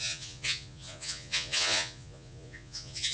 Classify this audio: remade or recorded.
remade